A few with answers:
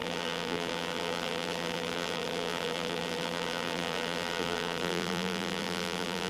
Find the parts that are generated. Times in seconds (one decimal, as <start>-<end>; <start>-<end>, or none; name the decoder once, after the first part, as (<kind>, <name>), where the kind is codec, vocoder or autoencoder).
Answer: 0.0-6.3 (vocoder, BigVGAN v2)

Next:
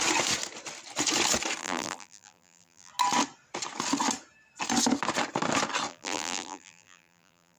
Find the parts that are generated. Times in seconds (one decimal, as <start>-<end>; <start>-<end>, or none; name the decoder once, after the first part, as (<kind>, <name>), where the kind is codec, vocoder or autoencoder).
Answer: 1.6-2.9 (vocoder, BigVGAN v2); 5.9-7.6

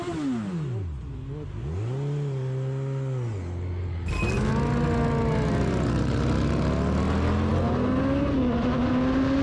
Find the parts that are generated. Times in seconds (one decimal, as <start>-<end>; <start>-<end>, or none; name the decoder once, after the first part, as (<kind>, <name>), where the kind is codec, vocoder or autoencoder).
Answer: none

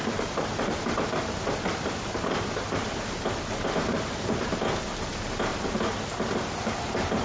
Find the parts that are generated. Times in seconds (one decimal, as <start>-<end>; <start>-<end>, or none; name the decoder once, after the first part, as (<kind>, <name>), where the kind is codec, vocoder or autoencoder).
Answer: 0.0-2.4 (vocoder, BigVGAN v2); 5.5-7.2

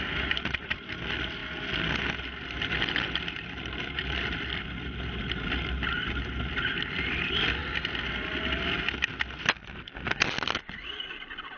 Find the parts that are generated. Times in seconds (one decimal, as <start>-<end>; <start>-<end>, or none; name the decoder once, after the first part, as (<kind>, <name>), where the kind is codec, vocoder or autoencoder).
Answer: none